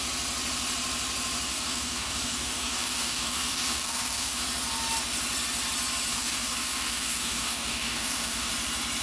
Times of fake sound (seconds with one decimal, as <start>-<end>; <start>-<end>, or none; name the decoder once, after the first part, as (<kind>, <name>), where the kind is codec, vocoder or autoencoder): 1.5-4.4 (codec, DAC); 6.1-8.5